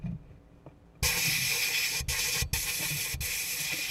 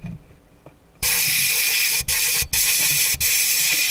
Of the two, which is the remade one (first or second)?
second